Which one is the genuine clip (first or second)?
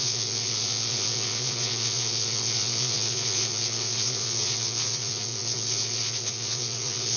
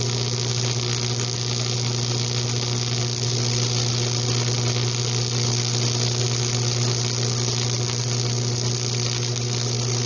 second